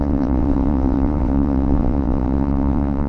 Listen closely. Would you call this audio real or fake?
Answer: fake